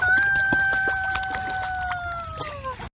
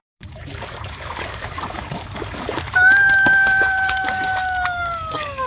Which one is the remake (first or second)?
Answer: second